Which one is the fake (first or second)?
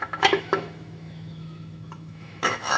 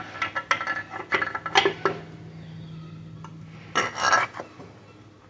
first